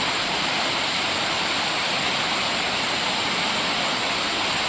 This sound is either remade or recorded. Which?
recorded